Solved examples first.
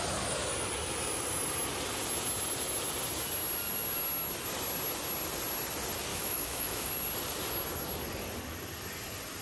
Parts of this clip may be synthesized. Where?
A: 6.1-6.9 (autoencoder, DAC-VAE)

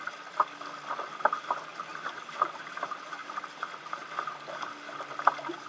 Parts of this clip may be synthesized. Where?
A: none

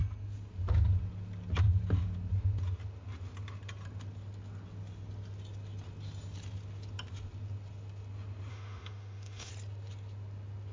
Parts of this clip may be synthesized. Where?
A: 8.5-9.5 (autoencoder, DAC-VAE)

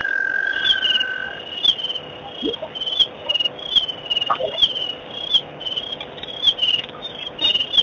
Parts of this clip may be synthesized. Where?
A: 0.0-0.6 (autoencoder, DAC-VAE)

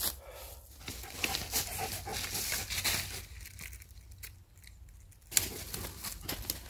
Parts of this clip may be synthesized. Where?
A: none

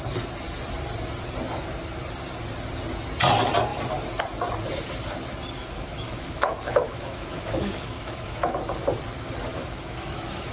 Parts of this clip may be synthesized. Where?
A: 5.6-8.5 (autoencoder, DAC-VAE); 9.5-10.5